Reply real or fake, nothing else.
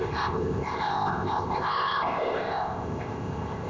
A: fake